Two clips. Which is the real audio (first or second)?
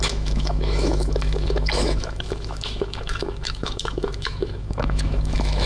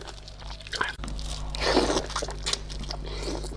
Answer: second